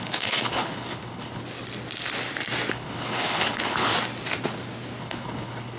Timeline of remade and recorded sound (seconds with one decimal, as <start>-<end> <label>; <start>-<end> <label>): 0.0-1.4 remade; 1.4-2.7 recorded; 2.7-3.9 remade; 3.9-5.0 recorded; 5.0-5.8 remade